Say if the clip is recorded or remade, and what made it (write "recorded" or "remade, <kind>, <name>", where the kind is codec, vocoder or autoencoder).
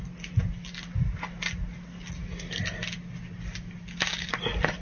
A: recorded